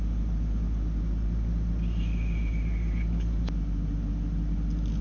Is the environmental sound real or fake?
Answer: real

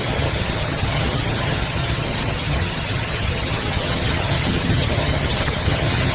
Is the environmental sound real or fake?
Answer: fake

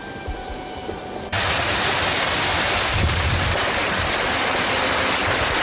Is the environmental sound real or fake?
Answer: real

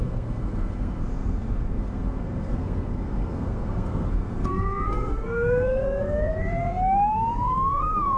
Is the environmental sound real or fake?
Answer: fake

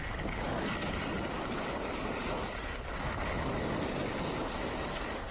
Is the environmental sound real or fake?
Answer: real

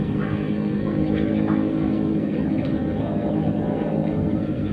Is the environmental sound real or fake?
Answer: fake